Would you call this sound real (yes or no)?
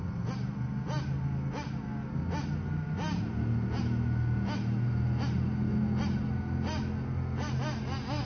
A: yes